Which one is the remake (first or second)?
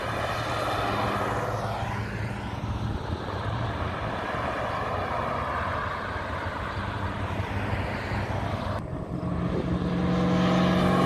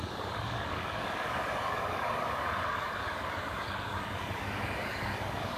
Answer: second